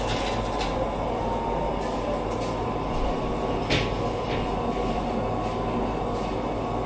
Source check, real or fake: real